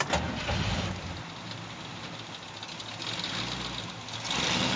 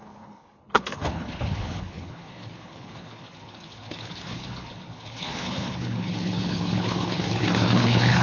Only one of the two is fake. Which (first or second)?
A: second